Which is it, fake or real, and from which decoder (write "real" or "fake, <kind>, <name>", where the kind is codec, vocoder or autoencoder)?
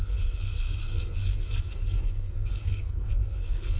fake, codec, SNAC